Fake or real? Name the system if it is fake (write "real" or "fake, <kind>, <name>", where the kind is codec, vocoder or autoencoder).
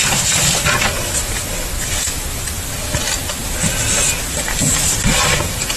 real